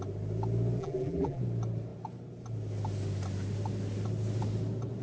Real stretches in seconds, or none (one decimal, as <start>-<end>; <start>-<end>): 0.0-0.8; 1.4-5.0